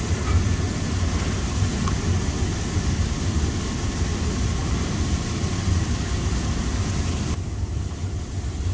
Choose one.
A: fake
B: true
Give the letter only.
B